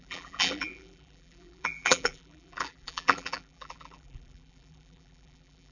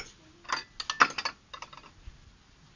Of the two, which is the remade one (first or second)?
first